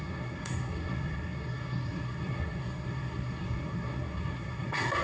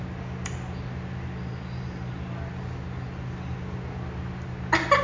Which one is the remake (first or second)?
first